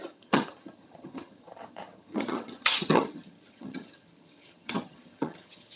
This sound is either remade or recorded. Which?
remade